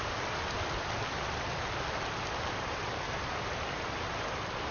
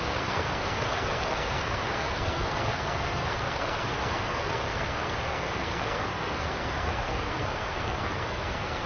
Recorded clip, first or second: first